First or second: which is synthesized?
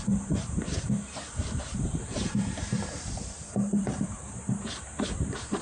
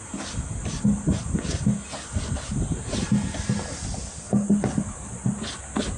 first